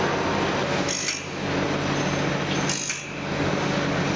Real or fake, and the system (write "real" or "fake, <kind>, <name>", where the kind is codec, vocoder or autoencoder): real